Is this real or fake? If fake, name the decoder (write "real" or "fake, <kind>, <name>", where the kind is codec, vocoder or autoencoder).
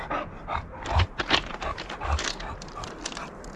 real